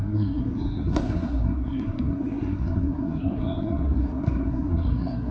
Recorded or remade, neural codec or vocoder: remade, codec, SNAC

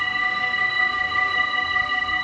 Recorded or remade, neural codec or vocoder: remade, codec, SNAC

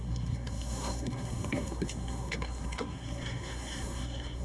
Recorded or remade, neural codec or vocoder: remade, codec, SNAC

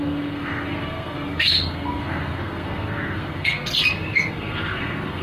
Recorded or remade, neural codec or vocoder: remade, codec, SNAC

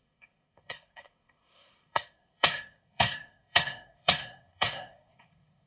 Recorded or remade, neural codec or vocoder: remade, codec, SNAC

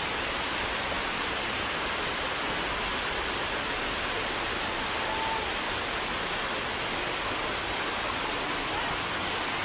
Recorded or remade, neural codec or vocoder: recorded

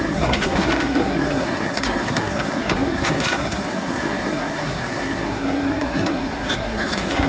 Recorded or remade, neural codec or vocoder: remade, codec, SNAC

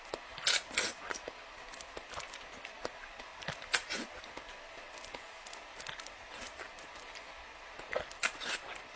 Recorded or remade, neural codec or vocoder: recorded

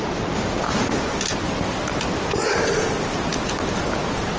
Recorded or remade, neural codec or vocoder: recorded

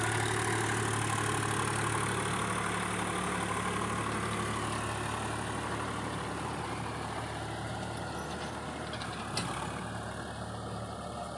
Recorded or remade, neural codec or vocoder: recorded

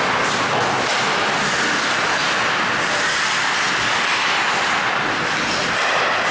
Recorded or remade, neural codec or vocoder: recorded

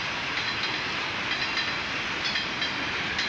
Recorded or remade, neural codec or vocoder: recorded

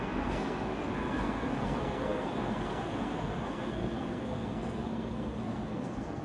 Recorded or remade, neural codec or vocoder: remade, codec, SNAC